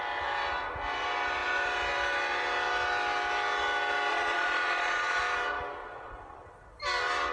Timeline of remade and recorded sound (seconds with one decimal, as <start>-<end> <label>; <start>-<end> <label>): 0.0-4.1 recorded; 4.1-5.2 remade; 5.2-5.8 recorded; 5.8-6.5 remade; 6.5-7.3 recorded